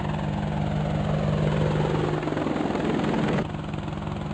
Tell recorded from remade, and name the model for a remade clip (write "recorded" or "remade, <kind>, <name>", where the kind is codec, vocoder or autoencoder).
recorded